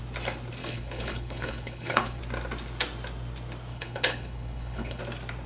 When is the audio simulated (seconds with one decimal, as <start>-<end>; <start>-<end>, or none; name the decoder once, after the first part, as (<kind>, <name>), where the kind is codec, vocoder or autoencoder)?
0.6-2.2 (codec, HILCodec); 3.7-5.0